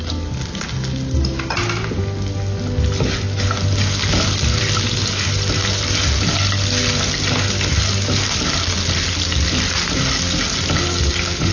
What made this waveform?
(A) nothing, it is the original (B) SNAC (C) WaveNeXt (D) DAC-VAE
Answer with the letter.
A